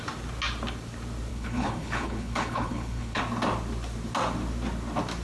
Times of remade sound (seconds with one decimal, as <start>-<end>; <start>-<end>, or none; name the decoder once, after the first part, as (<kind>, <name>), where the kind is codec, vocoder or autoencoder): 1.3-3.2 (codec, HILCodec)